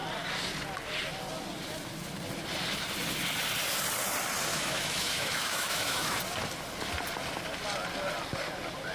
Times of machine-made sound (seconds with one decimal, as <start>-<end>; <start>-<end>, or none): 4.5-6.2